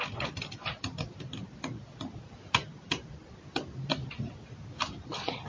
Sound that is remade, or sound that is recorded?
recorded